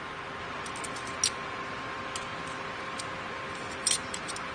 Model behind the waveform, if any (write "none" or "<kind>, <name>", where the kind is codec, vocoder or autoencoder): none